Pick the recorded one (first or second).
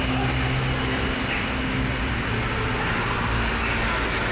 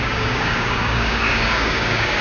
first